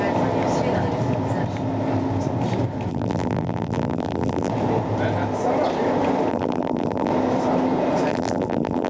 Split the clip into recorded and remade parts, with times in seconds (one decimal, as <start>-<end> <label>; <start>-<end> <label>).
0.0-2.9 recorded; 2.9-4.5 remade; 4.5-6.3 recorded; 6.3-7.1 remade; 7.1-8.1 recorded; 8.1-8.9 remade